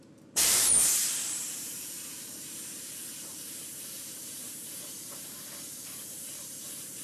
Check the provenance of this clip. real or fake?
fake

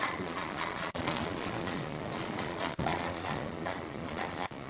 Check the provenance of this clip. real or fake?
fake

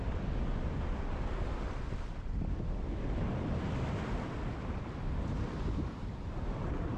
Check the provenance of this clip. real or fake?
real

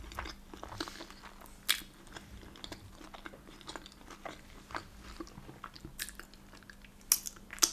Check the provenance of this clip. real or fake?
real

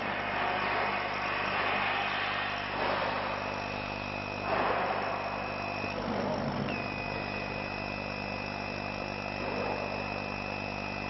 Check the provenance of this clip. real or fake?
real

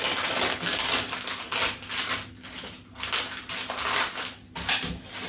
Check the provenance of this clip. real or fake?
real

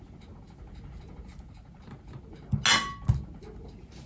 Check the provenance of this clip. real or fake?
real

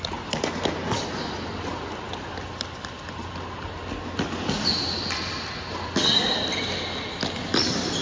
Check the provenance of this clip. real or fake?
real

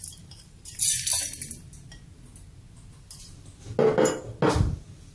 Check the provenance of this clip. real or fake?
real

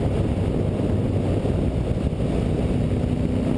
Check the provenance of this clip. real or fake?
real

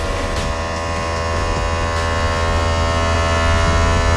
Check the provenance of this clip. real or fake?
real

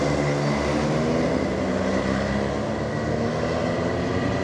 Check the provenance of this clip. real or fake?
real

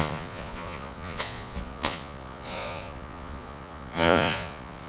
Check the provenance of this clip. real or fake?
fake